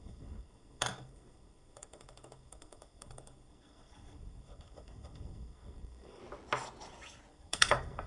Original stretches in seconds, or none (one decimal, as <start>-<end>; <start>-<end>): 6.2-7.3

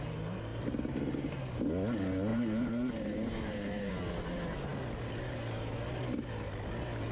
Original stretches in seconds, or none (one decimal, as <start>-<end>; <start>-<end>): 0.0-0.5; 1.5-2.3; 3.9-7.1

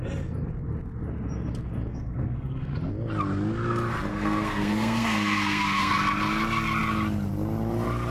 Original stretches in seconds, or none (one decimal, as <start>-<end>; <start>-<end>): 0.0-1.9; 2.7-4.1; 5.9-8.1

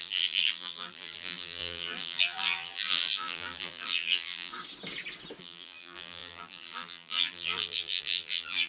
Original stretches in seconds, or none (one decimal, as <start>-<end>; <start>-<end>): 4.5-5.4

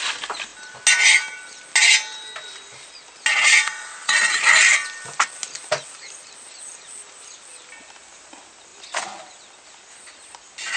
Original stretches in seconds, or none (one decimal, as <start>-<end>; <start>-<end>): 0.0-3.3; 4.1-10.8

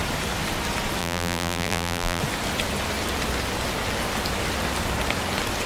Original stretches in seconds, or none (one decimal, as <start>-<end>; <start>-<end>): 0.0-1.0; 2.2-5.7

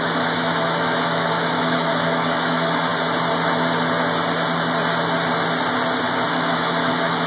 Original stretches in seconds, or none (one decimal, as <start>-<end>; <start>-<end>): 2.9-6.3